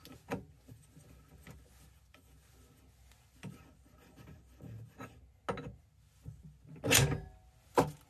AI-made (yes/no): no